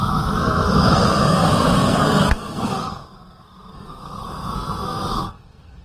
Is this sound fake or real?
fake